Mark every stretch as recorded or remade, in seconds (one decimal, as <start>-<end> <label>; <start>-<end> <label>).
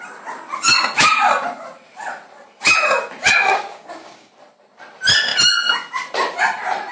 0.0-3.5 recorded; 3.5-4.3 remade; 4.3-6.9 recorded